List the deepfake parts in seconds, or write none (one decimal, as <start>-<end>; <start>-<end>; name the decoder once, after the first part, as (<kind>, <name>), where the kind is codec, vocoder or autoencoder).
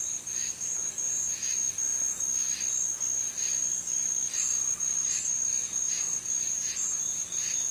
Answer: none